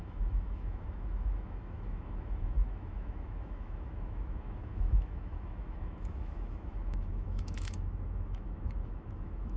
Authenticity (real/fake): fake